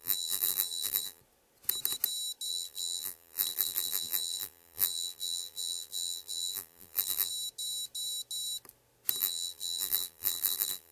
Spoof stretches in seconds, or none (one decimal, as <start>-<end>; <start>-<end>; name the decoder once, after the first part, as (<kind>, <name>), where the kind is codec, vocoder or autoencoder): 0.0-1.2 (vocoder, BigVGAN v2); 2.5-7.3; 9.2-10.9